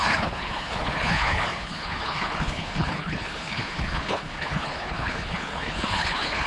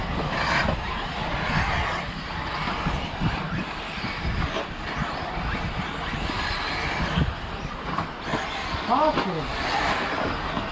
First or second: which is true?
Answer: second